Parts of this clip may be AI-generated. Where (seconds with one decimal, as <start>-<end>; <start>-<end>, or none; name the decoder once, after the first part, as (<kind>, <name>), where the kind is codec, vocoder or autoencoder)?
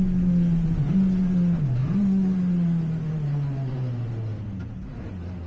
none